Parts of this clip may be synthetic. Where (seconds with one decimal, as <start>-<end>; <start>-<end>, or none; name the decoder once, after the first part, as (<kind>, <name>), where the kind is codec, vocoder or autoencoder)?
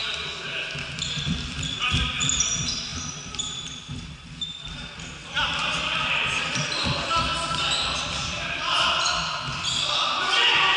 1.1-7.3 (vocoder, BigVGAN v2); 8.0-10.8